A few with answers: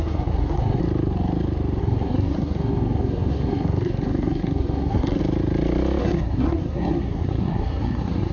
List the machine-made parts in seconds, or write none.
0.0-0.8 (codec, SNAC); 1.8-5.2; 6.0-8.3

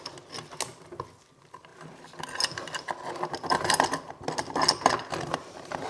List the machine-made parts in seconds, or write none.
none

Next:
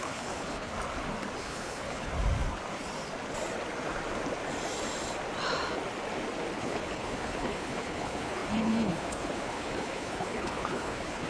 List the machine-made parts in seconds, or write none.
0.0-0.7 (codec, HILCodec); 1.4-2.1; 6.6-11.3

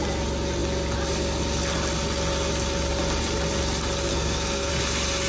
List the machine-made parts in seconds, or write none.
4.1-4.7 (codec, SNAC)